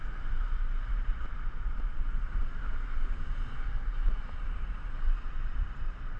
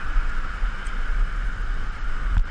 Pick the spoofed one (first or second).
first